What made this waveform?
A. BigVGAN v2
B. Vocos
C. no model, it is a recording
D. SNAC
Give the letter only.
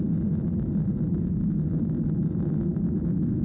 C